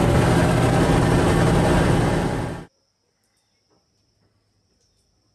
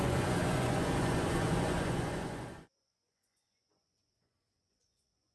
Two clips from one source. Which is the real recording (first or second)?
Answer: first